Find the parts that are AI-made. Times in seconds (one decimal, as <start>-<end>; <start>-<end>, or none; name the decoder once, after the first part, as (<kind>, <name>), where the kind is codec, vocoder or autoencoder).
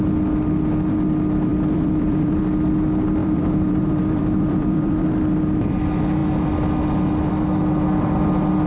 1.5-2.4 (vocoder, BigVGAN v2); 3.2-5.1